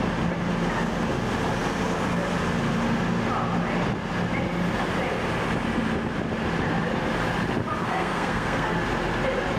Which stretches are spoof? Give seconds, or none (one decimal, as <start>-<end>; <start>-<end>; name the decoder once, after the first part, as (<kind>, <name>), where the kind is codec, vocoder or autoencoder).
7.8-8.7 (codec, SNAC)